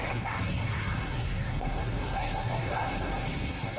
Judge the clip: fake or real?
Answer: fake